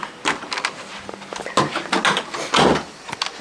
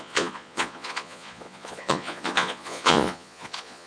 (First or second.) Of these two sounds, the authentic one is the first